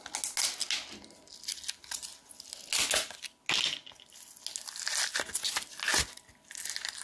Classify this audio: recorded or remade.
recorded